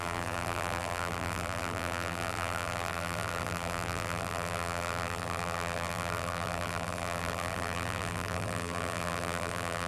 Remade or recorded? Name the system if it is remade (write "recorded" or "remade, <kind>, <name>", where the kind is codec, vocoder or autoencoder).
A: remade, vocoder, BigVGAN v2